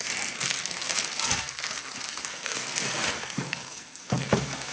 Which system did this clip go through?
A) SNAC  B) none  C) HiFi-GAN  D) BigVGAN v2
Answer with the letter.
A